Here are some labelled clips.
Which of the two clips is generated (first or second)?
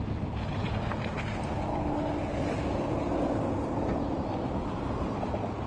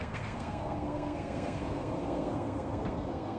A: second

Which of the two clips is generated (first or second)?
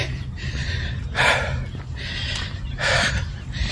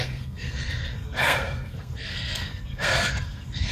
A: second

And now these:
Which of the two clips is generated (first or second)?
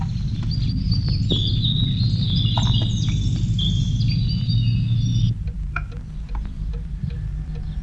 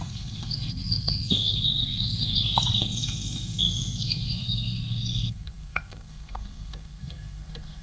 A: second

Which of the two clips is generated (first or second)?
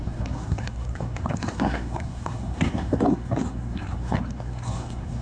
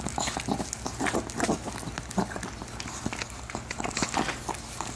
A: first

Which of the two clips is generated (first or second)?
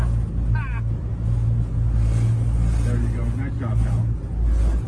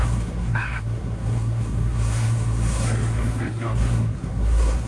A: second